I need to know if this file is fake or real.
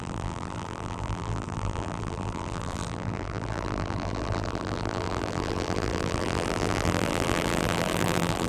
fake